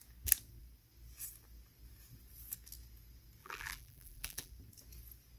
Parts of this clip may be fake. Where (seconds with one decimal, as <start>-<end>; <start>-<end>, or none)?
3.4-4.5